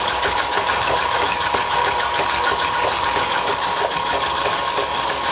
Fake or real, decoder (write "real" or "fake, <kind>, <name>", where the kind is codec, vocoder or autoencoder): fake, codec, DAC